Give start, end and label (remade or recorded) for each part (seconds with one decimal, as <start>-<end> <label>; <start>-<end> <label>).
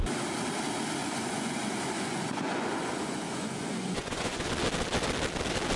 0.0-1.0 recorded; 1.0-4.5 remade; 4.5-5.8 recorded